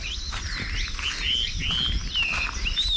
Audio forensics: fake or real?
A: real